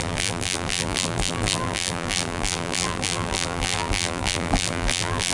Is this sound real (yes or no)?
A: no